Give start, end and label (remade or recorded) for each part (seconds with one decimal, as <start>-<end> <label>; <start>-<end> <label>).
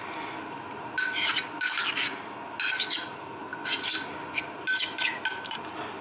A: 0.0-6.0 recorded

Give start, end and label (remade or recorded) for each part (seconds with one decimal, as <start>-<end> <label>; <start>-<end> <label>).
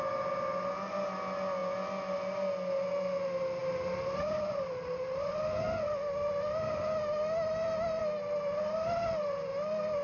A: 0.0-10.0 recorded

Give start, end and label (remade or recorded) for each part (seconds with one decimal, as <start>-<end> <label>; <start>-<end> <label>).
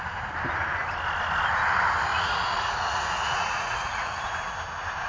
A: 0.0-2.1 recorded; 2.1-4.2 remade; 4.2-5.1 recorded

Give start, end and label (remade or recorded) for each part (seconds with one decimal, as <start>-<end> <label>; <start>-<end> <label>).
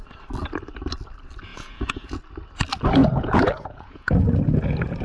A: 0.0-1.5 recorded; 1.5-2.2 remade; 2.2-3.0 recorded; 3.0-4.4 remade; 4.4-5.0 recorded